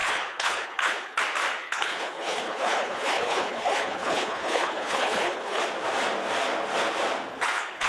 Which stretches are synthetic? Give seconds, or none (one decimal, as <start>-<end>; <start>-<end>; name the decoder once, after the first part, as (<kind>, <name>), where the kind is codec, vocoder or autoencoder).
0.0-1.2 (codec, HILCodec); 1.6-5.6; 7.3-7.9